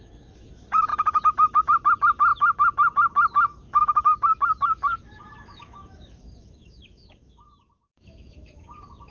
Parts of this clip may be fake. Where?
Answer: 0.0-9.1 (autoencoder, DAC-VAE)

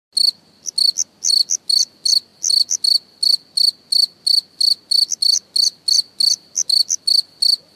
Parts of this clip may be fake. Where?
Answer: none